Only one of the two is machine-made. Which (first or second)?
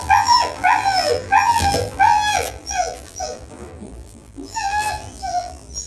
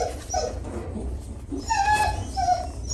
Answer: first